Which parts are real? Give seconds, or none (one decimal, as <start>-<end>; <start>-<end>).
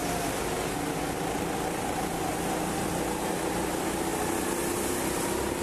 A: 0.0-5.6